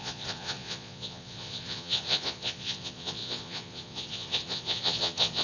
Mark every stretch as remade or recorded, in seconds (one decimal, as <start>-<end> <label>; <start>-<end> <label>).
0.0-5.4 remade